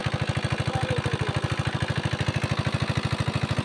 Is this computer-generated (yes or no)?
no